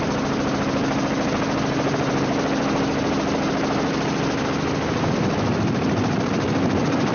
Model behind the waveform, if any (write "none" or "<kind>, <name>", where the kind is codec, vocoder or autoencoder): none